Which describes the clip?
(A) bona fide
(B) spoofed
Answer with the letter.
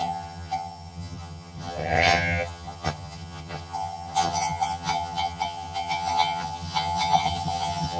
B